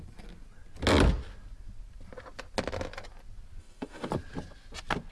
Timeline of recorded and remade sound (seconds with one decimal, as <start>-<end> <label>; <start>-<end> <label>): 0.0-3.6 recorded; 3.6-4.1 remade; 4.1-5.1 recorded